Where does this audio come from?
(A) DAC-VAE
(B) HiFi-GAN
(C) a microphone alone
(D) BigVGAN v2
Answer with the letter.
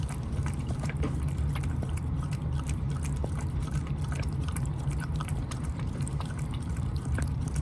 D